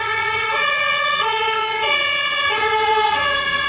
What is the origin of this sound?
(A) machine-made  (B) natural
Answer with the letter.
A